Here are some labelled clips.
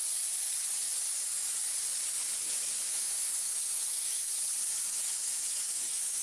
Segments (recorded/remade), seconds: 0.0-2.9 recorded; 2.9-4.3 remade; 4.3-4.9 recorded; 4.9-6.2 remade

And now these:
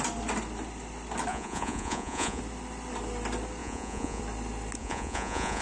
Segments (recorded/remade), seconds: 0.0-1.3 recorded; 1.3-2.4 remade; 2.4-3.6 recorded; 3.6-4.2 remade; 4.2-4.8 recorded; 4.8-5.6 remade